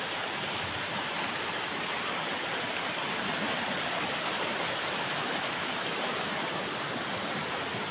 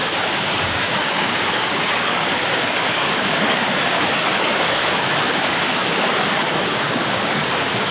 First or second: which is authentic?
first